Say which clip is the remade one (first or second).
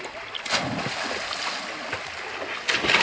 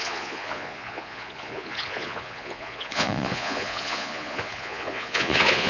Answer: second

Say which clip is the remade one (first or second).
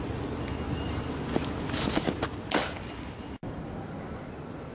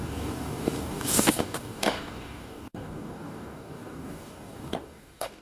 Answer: second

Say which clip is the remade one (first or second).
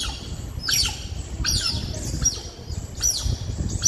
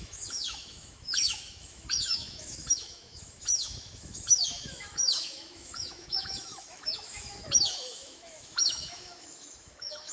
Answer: second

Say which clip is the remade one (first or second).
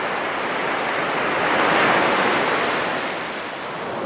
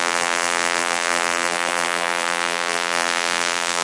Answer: second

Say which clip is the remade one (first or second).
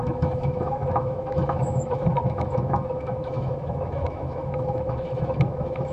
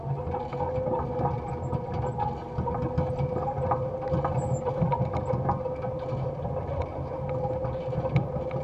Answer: first